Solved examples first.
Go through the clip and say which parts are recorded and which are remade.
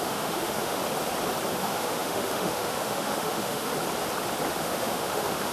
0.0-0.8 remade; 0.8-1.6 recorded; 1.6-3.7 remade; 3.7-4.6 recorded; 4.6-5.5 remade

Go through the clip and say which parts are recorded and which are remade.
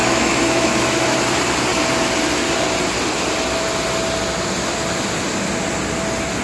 0.0-1.1 remade; 1.1-6.4 recorded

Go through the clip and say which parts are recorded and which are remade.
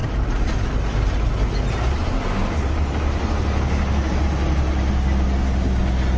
0.0-6.2 recorded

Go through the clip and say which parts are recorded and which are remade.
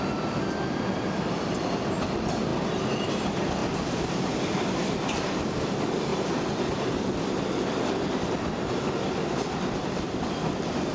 0.0-10.9 recorded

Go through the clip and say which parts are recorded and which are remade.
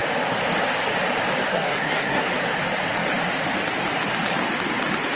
0.0-1.5 recorded; 1.5-2.3 remade; 2.3-5.2 recorded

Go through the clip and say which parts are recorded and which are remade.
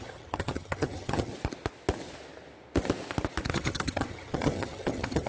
0.0-1.3 remade; 1.3-3.5 recorded; 3.5-5.3 remade